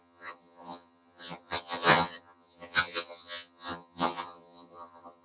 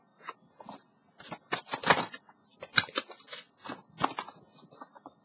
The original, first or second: second